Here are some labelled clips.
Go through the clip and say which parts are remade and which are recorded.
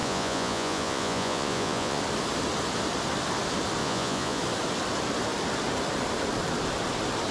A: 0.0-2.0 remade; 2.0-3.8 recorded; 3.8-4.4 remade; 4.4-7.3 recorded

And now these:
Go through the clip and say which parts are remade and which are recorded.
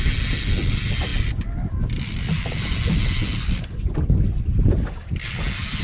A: 0.0-5.8 recorded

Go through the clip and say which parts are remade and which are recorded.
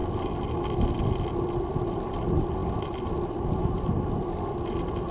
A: 0.0-5.1 recorded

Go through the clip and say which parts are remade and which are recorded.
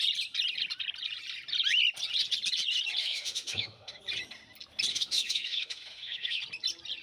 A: 0.0-3.0 recorded; 3.0-4.0 remade; 4.0-4.9 recorded; 4.9-6.4 remade; 6.4-7.0 recorded